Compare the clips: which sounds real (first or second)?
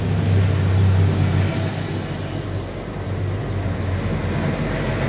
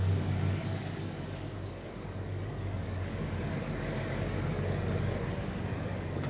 first